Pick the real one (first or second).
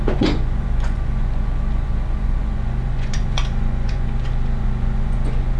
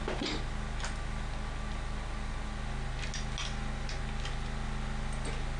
second